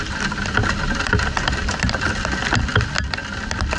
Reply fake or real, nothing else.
real